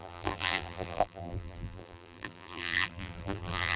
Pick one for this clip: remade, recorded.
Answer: remade